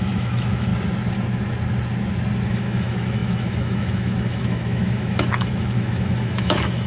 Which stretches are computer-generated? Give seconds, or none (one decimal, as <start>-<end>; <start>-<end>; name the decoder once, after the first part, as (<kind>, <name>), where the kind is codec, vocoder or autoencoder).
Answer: 0.0-0.7 (autoencoder, DAC-VAE); 2.5-6.9

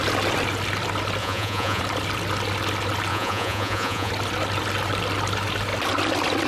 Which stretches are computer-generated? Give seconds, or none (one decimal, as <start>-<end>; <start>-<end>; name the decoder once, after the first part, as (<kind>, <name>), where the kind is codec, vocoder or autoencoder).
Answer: 1.2-1.8 (vocoder, Vocos); 3.1-4.1

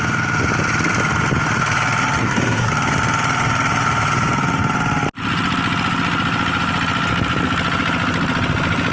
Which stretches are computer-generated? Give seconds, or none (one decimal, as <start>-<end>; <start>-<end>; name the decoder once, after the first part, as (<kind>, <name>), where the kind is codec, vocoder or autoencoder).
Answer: 2.2-2.7 (codec, SNAC)